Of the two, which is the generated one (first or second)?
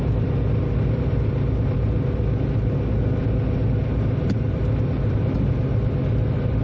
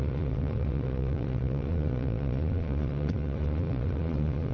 second